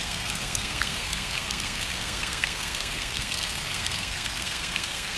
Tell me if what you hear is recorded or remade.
remade